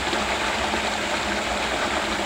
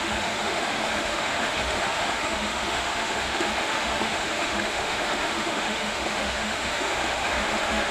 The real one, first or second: first